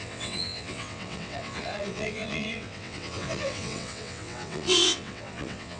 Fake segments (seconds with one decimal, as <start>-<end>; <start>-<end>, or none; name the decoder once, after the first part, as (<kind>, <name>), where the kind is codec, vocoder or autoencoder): 0.0-5.8 (vocoder, WaveNeXt)